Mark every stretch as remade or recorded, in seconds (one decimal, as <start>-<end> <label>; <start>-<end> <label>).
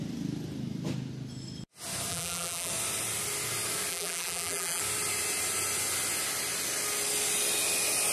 0.0-2.1 recorded; 2.1-2.7 remade; 2.7-3.9 recorded; 3.9-4.8 remade; 4.8-8.1 recorded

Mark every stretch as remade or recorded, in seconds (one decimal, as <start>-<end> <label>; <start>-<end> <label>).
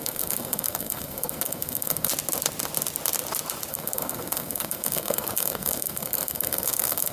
0.0-2.1 remade; 2.1-3.7 recorded; 3.7-7.1 remade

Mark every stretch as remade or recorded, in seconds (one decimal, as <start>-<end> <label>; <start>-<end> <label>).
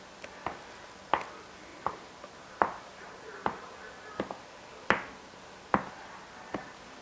0.0-1.7 recorded; 1.7-3.8 remade; 3.8-7.0 recorded